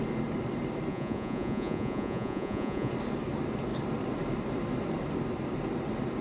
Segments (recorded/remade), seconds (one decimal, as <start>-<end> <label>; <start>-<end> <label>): 0.0-0.9 recorded; 0.9-2.9 remade; 2.9-6.2 recorded